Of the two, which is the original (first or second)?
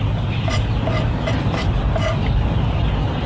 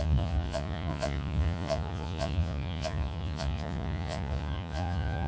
first